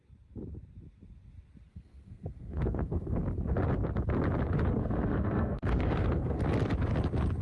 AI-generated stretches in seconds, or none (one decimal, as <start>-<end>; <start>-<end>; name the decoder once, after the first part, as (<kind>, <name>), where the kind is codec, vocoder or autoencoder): 1.7-3.2 (codec, SNAC); 4.8-6.4